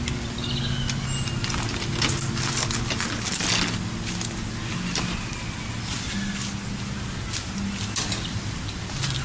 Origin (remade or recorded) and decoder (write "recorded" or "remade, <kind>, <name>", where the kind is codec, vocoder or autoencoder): recorded